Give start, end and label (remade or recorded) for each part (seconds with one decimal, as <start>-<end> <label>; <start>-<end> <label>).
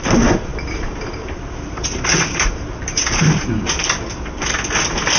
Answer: 0.0-0.5 recorded; 0.5-3.6 remade; 3.6-5.2 recorded